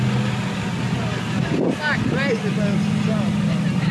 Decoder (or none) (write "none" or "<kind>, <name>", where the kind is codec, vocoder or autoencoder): none